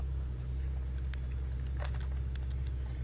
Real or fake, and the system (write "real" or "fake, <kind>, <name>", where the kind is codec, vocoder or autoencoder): real